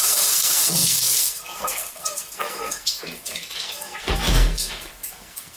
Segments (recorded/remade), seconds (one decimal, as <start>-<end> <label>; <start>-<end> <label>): 0.0-5.6 remade